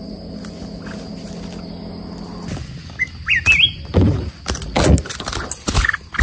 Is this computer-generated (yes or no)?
no